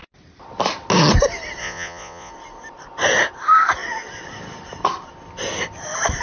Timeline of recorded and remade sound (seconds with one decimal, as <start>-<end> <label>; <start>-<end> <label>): 0.0-1.6 recorded; 1.6-2.3 remade; 2.3-6.2 recorded